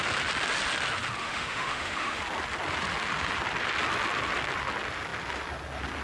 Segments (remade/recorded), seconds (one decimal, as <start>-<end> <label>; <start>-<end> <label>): 0.0-1.2 recorded; 1.2-2.2 remade; 2.2-6.0 recorded